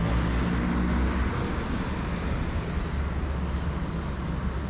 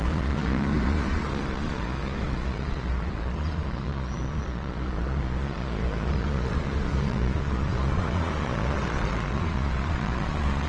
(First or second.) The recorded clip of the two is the first